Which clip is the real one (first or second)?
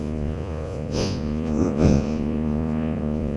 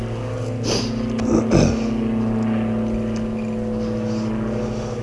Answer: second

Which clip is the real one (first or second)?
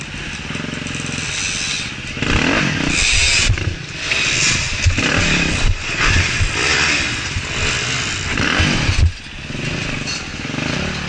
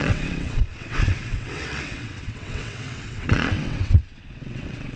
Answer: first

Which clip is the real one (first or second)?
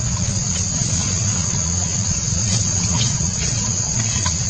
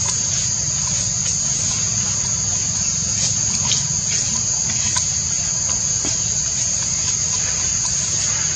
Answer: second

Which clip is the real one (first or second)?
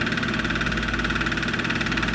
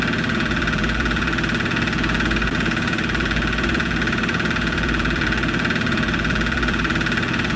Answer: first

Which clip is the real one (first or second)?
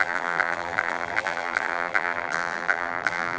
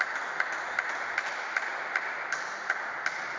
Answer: second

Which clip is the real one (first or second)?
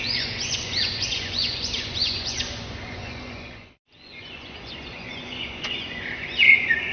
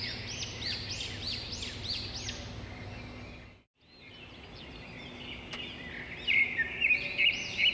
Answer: second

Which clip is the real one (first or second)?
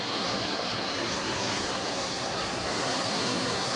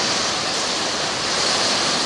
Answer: second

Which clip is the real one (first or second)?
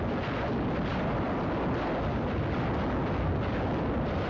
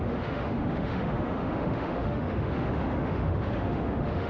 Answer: first